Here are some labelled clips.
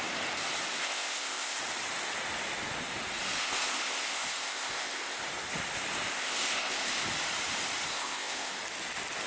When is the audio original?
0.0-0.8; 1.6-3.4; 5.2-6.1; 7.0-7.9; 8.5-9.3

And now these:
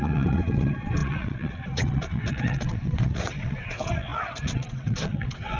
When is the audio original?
none

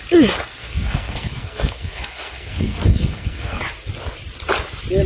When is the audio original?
0.0-0.5; 3.6-5.1

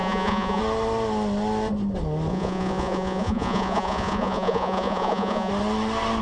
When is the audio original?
0.6-2.3; 5.5-6.2

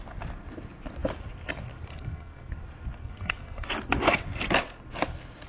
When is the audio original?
0.0-1.9; 2.5-3.0; 3.7-5.5

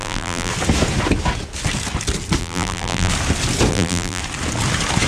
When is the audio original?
0.5-2.4; 3.1-3.7; 4.2-5.1

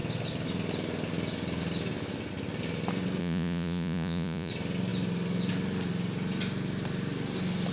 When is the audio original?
0.0-3.2; 4.5-7.7

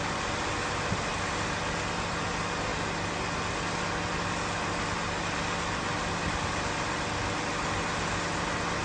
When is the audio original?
0.0-8.8